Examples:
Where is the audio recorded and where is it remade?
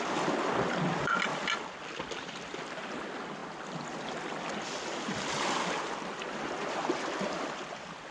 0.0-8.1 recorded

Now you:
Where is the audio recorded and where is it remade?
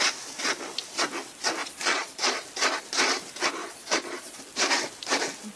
0.0-1.6 recorded; 1.6-2.3 remade; 2.3-3.6 recorded; 3.6-4.4 remade; 4.4-5.6 recorded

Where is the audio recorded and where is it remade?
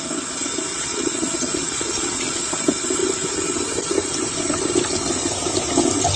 0.0-0.7 recorded; 0.7-2.5 remade; 2.5-6.2 recorded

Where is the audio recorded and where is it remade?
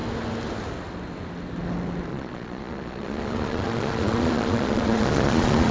0.0-2.1 recorded; 2.1-5.7 remade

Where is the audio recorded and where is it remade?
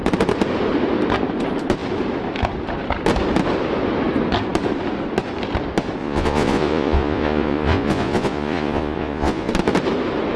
0.0-6.0 recorded; 6.0-9.5 remade; 9.5-10.4 recorded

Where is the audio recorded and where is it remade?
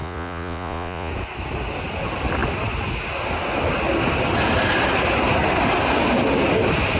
0.0-1.1 remade; 1.1-7.0 recorded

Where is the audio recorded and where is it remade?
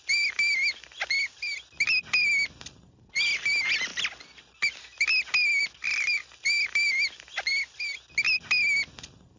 0.0-9.4 recorded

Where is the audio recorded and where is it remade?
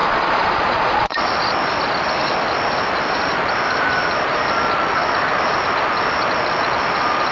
0.0-1.3 remade; 1.3-7.3 recorded